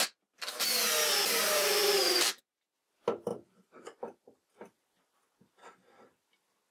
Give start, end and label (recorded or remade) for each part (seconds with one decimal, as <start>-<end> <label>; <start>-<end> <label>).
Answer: 0.0-1.8 recorded; 1.8-2.4 remade; 2.4-3.3 recorded; 3.3-4.5 remade; 4.5-6.7 recorded